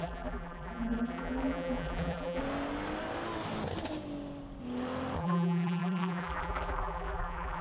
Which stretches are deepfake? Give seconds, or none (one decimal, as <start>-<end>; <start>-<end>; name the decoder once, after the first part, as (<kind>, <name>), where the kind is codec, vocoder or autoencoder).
0.0-2.4 (vocoder, BigVGAN v2); 5.2-7.6